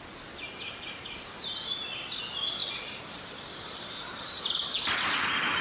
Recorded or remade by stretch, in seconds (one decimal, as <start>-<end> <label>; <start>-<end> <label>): 0.0-2.6 recorded; 2.6-3.3 remade; 3.3-5.6 recorded

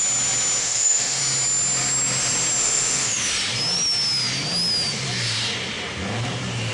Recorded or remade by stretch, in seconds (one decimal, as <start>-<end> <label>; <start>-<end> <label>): 0.0-0.6 recorded; 0.6-1.2 remade; 1.2-2.6 recorded; 2.6-3.3 remade; 3.3-6.7 recorded

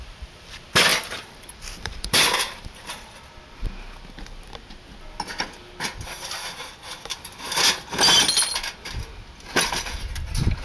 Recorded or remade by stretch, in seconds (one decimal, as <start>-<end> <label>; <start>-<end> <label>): 0.0-0.9 recorded; 0.9-3.2 remade; 3.2-10.6 recorded

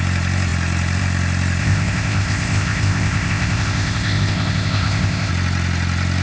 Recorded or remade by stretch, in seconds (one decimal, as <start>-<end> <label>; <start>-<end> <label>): 0.0-1.6 recorded; 1.6-5.3 remade; 5.3-6.2 recorded

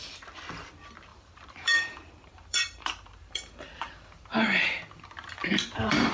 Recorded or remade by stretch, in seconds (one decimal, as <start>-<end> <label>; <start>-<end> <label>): 0.0-1.1 recorded; 1.1-4.8 remade; 4.8-5.4 recorded; 5.4-6.1 remade

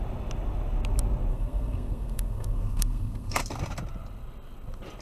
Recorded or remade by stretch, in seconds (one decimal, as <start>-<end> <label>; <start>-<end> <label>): 0.0-1.3 recorded; 1.3-3.4 remade; 3.4-5.0 recorded